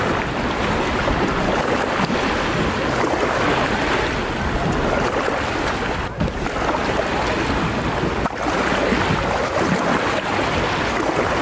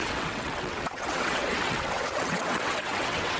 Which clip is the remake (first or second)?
second